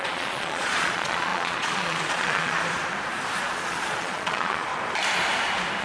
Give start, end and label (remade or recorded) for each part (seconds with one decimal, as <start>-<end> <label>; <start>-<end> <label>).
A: 0.0-2.6 remade; 2.6-3.4 recorded; 3.4-4.7 remade; 4.7-5.8 recorded

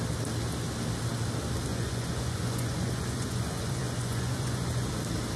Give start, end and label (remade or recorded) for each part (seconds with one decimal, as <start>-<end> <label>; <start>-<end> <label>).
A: 0.0-1.7 recorded; 1.7-4.9 remade; 4.9-5.4 recorded

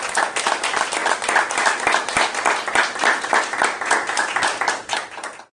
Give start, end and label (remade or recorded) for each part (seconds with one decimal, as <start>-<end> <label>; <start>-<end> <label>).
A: 0.0-5.6 recorded

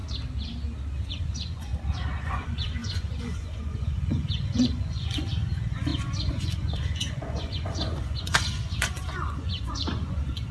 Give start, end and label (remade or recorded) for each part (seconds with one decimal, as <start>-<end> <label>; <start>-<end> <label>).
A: 0.0-1.1 recorded; 1.1-1.7 remade; 1.7-2.2 recorded; 2.2-10.5 remade

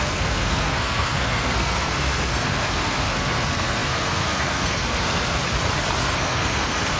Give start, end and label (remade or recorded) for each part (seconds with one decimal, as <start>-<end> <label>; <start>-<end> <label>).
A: 0.0-5.4 remade; 5.4-6.0 recorded; 6.0-7.0 remade